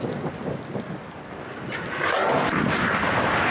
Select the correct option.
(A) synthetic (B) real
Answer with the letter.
B